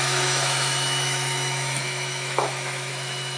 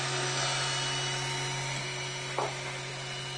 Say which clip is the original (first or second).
second